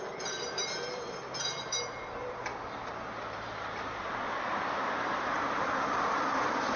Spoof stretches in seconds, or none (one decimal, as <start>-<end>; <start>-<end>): 0.0-6.8